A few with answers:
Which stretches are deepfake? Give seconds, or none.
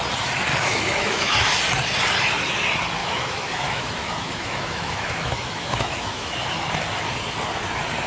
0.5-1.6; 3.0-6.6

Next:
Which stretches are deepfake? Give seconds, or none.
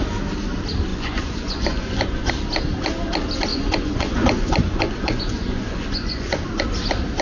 0.9-2.3; 3.5-6.4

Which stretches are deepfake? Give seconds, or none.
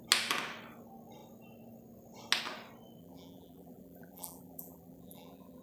3.0-5.6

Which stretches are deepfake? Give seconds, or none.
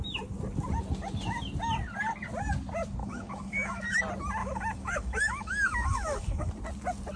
3.0-4.0; 4.4-6.5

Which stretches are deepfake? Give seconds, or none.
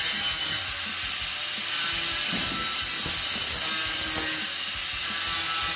none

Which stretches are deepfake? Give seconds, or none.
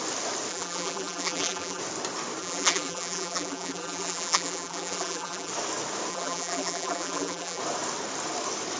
0.5-1.8; 2.4-5.5; 6.1-7.6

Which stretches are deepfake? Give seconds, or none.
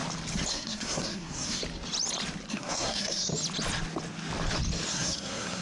0.5-1.6; 2.5-3.3; 4.9-5.6